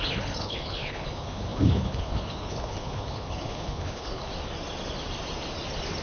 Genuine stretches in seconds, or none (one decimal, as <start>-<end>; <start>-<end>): 4.3-6.0